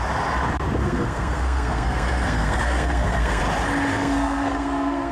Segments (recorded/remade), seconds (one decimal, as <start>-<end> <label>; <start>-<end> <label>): 0.0-0.8 recorded; 0.8-3.4 remade; 3.4-3.9 recorded; 3.9-5.1 remade